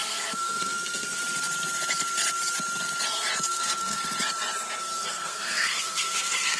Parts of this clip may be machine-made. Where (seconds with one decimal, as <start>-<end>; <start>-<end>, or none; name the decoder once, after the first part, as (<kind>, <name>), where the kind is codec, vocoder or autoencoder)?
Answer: 0.0-1.2 (codec, SNAC); 3.5-4.0; 4.8-6.6